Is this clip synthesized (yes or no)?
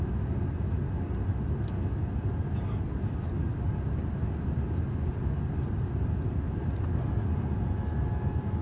no